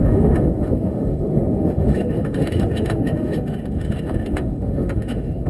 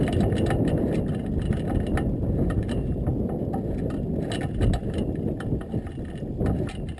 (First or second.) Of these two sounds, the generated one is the first